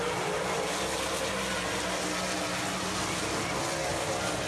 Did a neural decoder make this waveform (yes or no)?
no